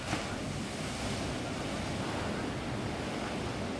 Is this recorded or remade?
recorded